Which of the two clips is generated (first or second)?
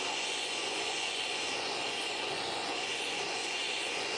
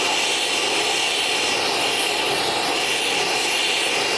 first